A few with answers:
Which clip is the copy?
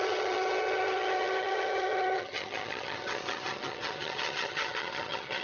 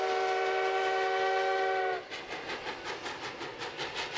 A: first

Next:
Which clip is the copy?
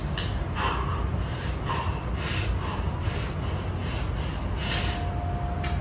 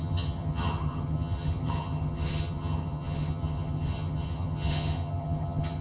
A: second